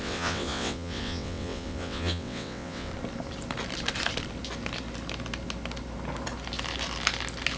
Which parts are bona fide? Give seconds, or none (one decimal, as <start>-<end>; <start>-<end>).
2.9-7.6